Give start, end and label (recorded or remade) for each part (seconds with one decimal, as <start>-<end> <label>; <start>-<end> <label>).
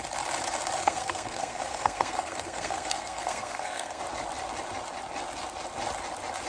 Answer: 0.0-0.8 recorded; 0.8-4.0 remade; 4.0-6.5 recorded